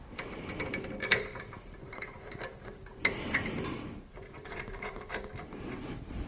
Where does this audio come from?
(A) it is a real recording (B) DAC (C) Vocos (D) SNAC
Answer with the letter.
A